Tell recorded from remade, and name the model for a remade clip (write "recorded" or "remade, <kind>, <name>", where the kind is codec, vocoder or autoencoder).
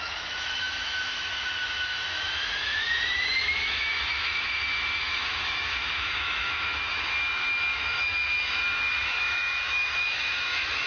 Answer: remade, autoencoder, DAC-VAE